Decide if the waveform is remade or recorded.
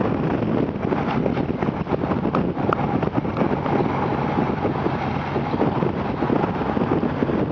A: recorded